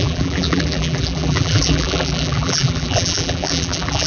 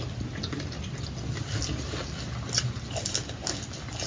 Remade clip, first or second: first